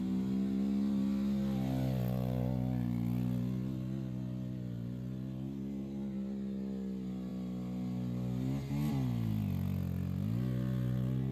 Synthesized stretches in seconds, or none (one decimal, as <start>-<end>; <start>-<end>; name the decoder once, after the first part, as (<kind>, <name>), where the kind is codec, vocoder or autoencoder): none